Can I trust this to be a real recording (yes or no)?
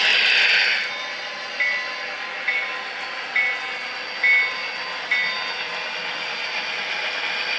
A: yes